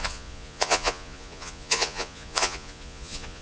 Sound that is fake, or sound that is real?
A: fake